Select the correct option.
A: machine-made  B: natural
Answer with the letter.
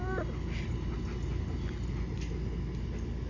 B